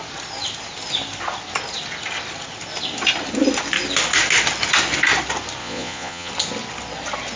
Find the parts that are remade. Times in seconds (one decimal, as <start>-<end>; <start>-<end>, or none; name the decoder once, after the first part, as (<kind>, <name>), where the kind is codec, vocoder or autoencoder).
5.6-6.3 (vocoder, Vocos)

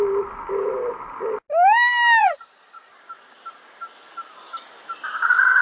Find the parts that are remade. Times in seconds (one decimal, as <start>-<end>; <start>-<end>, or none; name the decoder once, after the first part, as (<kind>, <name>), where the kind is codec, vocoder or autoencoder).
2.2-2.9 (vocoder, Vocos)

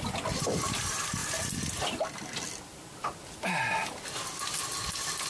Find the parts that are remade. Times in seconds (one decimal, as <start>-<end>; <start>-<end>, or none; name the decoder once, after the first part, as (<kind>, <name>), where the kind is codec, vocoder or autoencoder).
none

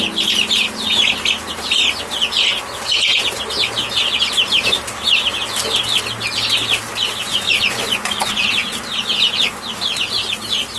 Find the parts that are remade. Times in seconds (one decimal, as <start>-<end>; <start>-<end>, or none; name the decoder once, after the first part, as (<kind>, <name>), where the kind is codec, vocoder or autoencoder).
7.2-8.5 (vocoder, Vocos)